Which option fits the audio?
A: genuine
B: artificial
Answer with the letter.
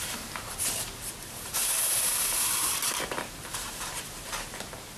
B